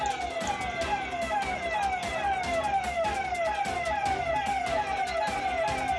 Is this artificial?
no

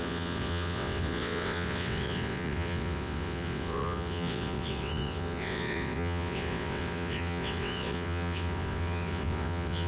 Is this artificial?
yes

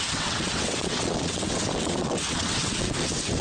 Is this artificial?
yes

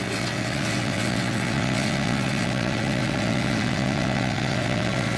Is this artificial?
yes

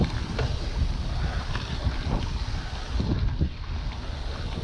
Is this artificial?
no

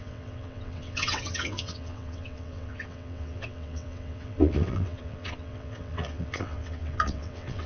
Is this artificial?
yes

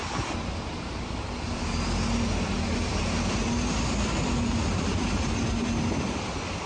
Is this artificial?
no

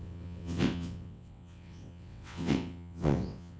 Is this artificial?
yes